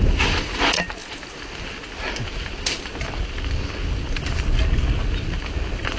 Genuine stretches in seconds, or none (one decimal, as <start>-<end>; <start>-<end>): 0.0-6.0